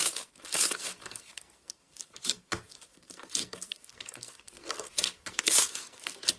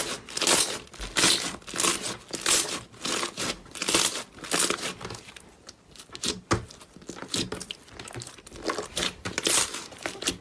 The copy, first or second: first